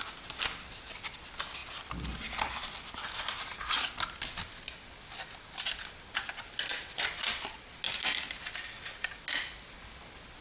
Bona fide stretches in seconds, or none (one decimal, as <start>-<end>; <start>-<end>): 0.0-10.4